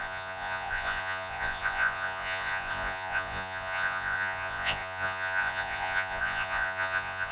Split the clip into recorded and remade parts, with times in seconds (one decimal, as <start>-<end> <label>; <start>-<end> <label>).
0.0-7.3 remade